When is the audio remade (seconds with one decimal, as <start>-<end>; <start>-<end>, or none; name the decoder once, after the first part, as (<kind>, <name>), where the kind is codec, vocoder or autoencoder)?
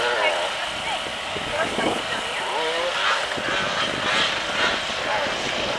1.1-2.2 (codec, DAC)